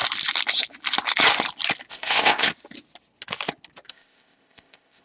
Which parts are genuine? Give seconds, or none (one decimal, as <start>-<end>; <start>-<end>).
0.0-1.9; 2.5-3.9